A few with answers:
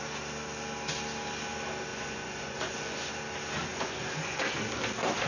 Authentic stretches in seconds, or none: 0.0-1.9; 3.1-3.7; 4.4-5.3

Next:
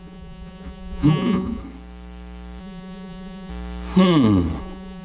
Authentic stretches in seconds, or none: 1.6-2.6; 3.5-4.6

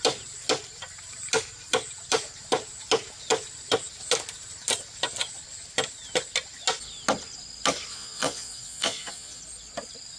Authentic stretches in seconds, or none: 0.0-7.9; 9.4-10.2

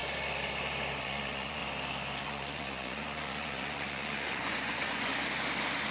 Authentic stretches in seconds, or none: 0.0-1.0; 1.6-2.2; 5.1-5.9